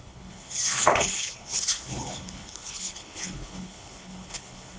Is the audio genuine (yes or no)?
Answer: no